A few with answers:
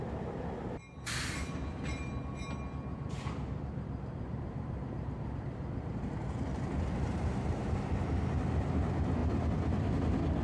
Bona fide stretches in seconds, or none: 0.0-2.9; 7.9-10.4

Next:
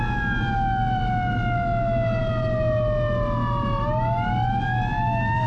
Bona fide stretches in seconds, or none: 0.0-5.5

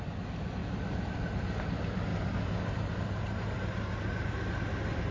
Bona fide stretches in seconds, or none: 0.0-0.6; 1.6-2.1; 4.3-5.1